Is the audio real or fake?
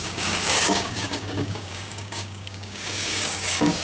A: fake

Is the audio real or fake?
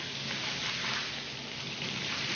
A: real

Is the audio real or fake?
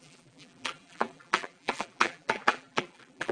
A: fake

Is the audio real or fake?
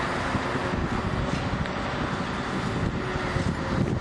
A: real